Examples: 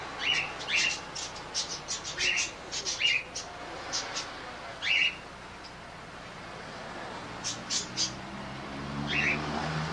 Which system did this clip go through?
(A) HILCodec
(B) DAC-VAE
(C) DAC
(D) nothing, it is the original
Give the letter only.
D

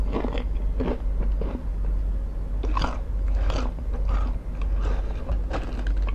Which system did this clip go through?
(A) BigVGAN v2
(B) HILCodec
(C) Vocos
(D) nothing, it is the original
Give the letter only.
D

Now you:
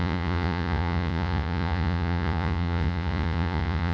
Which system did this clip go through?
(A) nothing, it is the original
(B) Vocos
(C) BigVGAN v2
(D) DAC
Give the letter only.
B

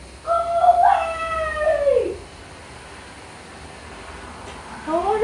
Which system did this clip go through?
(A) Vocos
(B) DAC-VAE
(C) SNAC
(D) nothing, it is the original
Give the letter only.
D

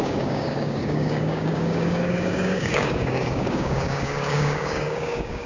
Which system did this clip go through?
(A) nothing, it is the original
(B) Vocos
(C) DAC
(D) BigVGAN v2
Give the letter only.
C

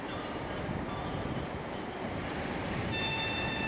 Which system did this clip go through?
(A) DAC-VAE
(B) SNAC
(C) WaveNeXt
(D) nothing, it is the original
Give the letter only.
D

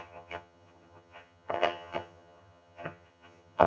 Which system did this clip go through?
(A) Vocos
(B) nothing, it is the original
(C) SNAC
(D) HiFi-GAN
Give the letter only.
D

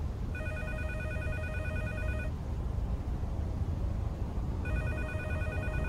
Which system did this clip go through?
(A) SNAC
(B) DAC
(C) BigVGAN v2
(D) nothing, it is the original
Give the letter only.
D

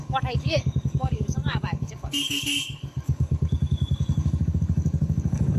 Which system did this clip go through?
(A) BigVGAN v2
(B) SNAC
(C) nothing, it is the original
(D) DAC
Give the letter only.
D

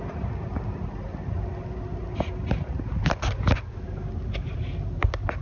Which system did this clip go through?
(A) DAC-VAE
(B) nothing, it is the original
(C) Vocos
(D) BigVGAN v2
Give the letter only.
B